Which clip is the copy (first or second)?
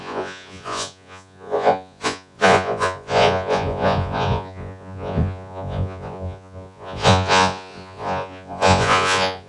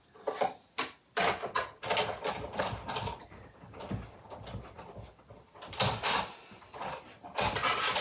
first